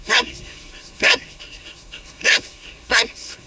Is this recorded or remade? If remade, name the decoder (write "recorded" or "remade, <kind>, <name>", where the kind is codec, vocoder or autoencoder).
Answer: remade, codec, SNAC